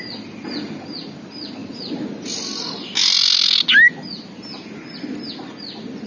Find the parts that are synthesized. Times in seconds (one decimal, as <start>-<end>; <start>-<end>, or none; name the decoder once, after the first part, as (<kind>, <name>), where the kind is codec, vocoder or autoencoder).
none